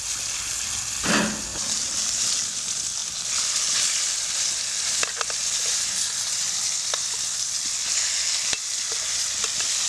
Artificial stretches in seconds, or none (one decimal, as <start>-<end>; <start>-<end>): 1.5-2.2